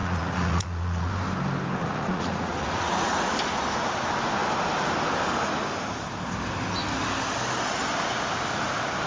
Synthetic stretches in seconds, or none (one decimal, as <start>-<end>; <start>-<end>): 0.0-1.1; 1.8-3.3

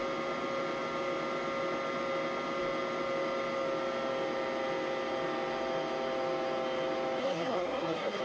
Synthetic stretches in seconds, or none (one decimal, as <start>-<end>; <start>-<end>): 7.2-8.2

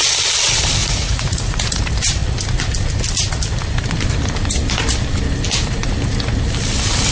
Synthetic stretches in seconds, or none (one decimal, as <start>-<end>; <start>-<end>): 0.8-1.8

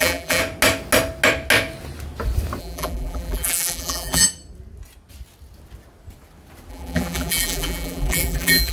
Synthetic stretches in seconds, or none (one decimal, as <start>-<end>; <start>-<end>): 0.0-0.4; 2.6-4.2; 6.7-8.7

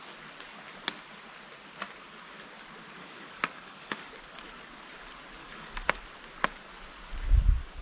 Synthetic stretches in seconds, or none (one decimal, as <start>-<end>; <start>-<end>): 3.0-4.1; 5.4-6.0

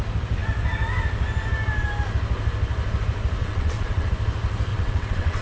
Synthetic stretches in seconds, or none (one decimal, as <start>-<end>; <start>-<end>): 3.4-4.1; 4.7-5.4

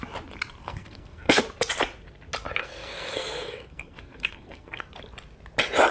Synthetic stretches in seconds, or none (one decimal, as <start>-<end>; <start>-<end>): 0.6-1.4; 2.6-4.9